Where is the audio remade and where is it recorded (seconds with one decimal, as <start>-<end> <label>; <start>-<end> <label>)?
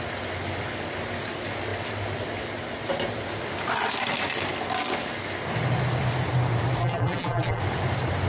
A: 0.0-6.8 recorded; 6.8-7.6 remade; 7.6-8.3 recorded